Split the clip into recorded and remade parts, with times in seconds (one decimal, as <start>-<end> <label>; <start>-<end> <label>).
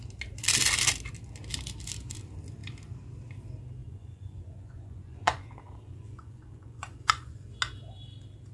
0.0-3.8 recorded; 3.8-7.5 remade; 7.5-8.5 recorded